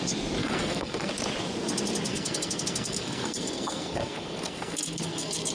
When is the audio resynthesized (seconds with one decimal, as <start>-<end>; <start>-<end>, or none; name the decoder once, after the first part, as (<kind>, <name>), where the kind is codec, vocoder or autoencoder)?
0.4-1.1 (codec, SNAC); 2.1-5.5